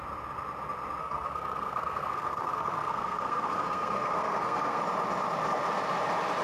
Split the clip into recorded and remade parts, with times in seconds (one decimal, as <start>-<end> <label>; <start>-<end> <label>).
0.0-1.0 recorded; 1.0-4.8 remade; 4.8-6.4 recorded